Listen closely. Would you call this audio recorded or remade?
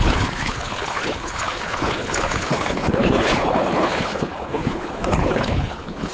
remade